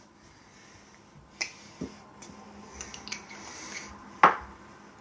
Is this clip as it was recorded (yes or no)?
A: yes